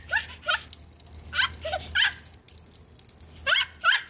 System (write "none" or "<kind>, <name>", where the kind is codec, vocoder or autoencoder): none